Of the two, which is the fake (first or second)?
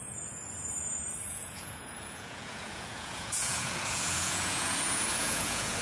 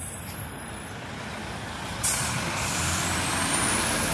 first